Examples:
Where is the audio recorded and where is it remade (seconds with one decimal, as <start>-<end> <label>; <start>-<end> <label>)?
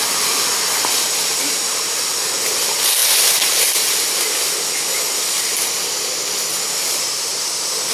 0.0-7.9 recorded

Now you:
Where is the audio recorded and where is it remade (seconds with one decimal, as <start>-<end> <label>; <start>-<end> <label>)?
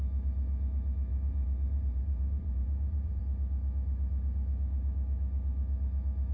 0.0-1.1 recorded; 1.1-3.2 remade; 3.2-6.3 recorded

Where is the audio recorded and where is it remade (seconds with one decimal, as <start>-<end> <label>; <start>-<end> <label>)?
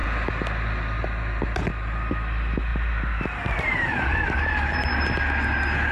0.0-2.7 recorded; 2.7-4.9 remade; 4.9-5.9 recorded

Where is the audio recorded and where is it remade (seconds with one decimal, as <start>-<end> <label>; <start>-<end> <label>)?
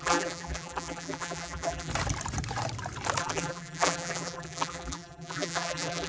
0.0-1.9 remade; 1.9-3.2 recorded; 3.2-6.1 remade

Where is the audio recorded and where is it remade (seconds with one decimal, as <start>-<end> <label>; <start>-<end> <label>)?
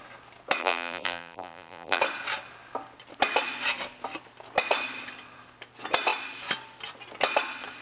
0.0-0.6 recorded; 0.6-2.0 remade; 2.0-7.8 recorded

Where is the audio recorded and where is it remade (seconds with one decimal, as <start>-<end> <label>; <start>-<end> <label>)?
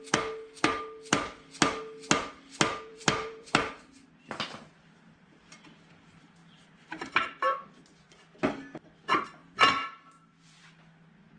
0.0-2.9 recorded; 2.9-3.7 remade; 3.7-6.4 recorded; 6.4-7.1 remade; 7.1-9.4 recorded; 9.4-10.6 remade; 10.6-11.4 recorded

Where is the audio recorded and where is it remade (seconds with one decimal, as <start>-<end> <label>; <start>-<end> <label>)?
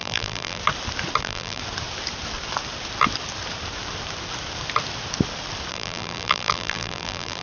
0.0-0.6 remade; 0.6-1.2 recorded; 1.2-1.6 remade; 1.6-5.7 recorded; 5.7-7.4 remade